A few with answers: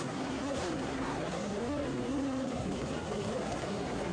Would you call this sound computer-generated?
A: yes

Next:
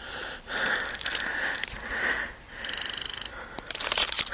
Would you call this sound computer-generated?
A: no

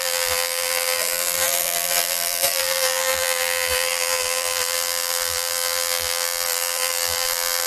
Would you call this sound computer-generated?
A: yes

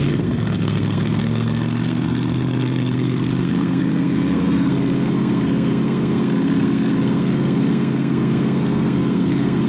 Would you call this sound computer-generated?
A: yes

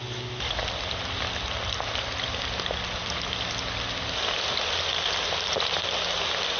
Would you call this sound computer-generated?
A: no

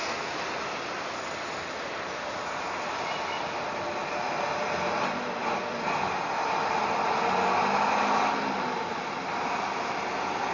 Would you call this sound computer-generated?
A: no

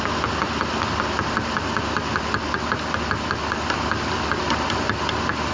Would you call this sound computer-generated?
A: no